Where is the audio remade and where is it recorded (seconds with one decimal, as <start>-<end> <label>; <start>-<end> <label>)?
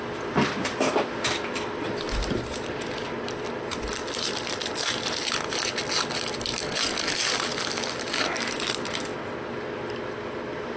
0.0-6.5 remade; 6.5-8.5 recorded; 8.5-9.1 remade; 9.1-9.9 recorded; 9.9-10.8 remade